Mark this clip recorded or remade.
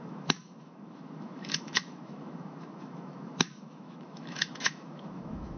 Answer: remade